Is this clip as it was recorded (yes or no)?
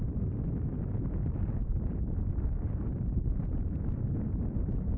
yes